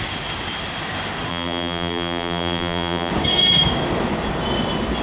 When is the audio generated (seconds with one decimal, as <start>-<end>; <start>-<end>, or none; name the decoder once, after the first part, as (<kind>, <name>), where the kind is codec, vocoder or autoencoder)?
1.3-3.1 (vocoder, BigVGAN v2)